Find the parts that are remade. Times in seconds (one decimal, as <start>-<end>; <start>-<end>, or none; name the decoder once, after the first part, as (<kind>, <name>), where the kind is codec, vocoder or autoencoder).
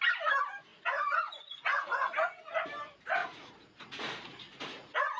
0.7-2.5 (vocoder, Vocos); 3.2-5.2